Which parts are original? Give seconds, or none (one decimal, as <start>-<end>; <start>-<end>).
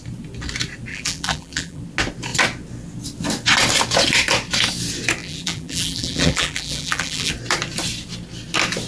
0.0-0.9; 1.8-5.2; 7.3-8.9